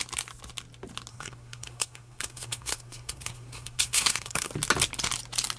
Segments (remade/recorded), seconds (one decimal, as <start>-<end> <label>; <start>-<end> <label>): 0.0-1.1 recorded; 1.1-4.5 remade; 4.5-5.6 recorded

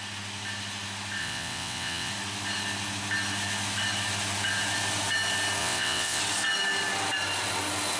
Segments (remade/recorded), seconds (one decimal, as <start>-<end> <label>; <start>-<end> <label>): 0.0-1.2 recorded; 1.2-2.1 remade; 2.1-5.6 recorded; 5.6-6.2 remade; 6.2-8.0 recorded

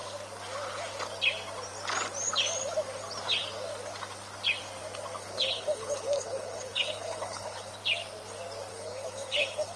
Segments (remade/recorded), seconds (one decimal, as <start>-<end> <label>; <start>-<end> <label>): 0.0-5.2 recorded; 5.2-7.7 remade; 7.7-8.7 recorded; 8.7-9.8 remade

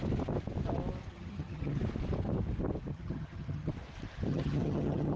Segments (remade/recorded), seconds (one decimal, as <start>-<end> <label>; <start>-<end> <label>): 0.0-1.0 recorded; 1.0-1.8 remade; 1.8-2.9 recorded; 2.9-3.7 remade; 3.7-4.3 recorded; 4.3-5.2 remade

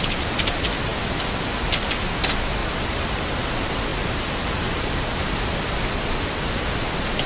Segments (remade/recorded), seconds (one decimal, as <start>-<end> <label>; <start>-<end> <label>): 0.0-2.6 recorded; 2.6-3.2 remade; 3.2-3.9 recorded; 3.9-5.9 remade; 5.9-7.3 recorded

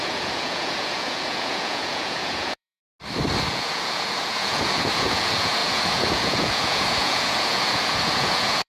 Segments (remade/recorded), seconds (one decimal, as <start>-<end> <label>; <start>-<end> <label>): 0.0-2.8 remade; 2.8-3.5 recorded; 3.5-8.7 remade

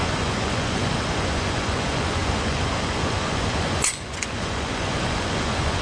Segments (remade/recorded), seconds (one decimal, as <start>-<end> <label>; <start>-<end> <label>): 0.0-5.8 remade